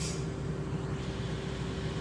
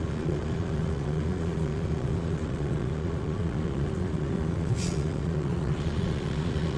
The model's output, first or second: second